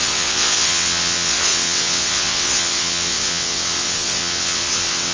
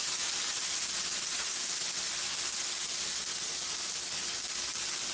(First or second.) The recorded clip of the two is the second